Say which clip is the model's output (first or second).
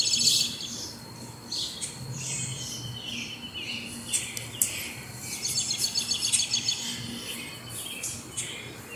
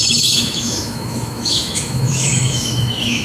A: second